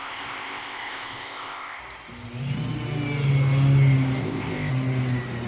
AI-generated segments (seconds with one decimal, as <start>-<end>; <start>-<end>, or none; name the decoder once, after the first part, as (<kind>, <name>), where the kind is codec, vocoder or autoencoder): 0.0-1.8 (codec, ZipCodec); 4.2-4.7